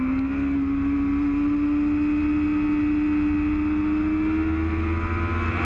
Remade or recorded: recorded